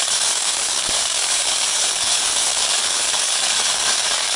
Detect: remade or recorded remade